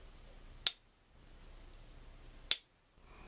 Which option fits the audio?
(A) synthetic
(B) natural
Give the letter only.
B